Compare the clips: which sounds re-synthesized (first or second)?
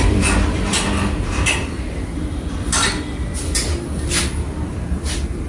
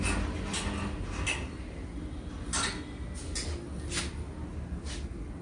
first